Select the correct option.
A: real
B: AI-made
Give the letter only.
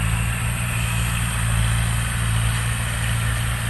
A